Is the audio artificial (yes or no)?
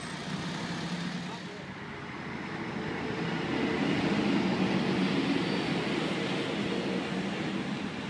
no